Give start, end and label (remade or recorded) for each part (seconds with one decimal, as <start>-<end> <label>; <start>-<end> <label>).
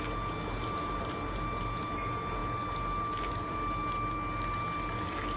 0.0-5.4 recorded